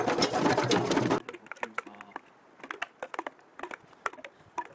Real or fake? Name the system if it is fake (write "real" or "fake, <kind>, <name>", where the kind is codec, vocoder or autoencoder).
real